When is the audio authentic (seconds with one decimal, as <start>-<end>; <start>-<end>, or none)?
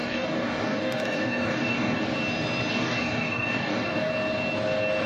2.0-2.7; 4.1-5.1